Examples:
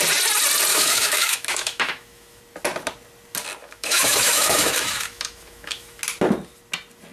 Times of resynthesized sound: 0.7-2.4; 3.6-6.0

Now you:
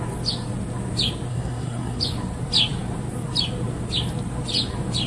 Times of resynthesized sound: 1.3-2.0

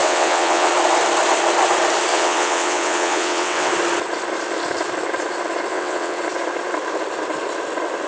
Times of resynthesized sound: 0.0-0.7; 2.1-3.7; 5.7-6.2